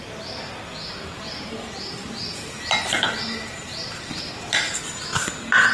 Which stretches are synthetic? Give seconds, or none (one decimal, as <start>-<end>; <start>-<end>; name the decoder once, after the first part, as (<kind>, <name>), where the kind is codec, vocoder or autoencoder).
0.8-4.2 (vocoder, BigVGAN v2)